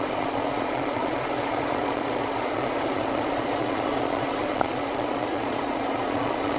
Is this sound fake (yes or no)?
yes